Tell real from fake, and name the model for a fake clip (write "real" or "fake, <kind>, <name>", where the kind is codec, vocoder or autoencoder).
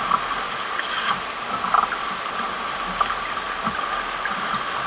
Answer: real